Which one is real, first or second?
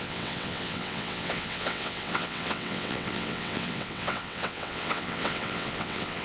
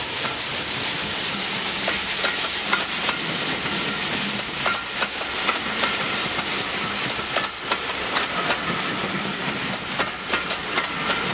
second